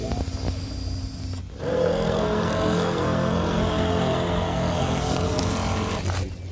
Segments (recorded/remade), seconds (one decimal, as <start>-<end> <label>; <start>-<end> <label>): 0.0-1.7 recorded; 1.7-5.5 remade; 5.5-6.5 recorded